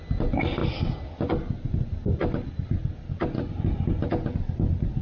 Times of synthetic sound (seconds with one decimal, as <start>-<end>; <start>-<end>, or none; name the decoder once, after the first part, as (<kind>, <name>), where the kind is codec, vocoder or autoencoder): none